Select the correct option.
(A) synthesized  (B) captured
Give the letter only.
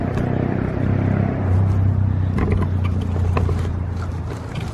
B